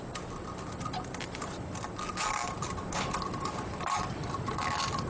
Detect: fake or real real